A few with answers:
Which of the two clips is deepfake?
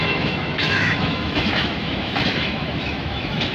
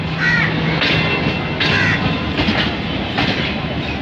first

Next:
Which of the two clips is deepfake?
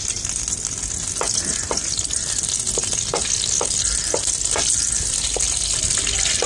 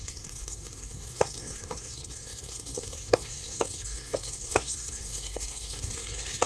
second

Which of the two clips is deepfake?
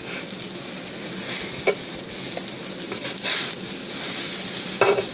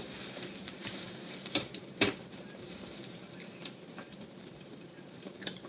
second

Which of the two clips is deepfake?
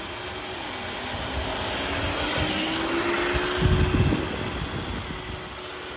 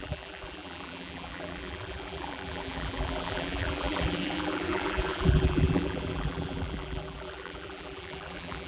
second